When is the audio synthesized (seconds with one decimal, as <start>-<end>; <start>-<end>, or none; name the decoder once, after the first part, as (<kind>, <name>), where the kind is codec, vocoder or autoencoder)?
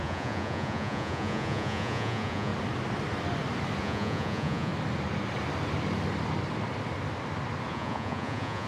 0.0-2.5 (vocoder, Vocos); 3.8-4.7; 7.7-8.7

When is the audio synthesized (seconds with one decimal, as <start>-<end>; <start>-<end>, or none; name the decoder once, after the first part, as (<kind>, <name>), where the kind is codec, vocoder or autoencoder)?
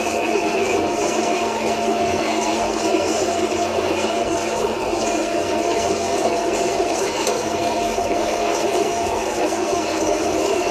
0.0-10.7 (codec, SNAC)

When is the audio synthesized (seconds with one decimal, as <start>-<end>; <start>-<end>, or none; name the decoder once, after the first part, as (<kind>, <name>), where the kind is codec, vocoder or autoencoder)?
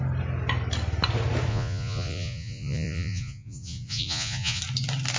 1.5-4.6 (vocoder, Vocos)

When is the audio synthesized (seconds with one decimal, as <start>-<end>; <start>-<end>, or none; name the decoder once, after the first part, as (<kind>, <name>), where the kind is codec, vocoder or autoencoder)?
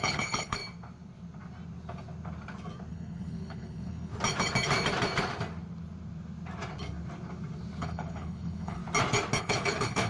0.0-0.6 (codec, HILCodec); 2.9-4.1; 7.8-8.8; 9.4-10.1